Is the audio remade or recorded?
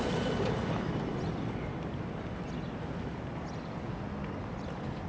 recorded